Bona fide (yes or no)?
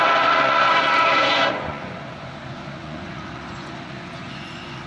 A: no